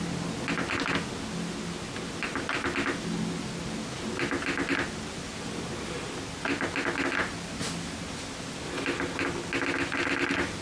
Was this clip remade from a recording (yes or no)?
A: no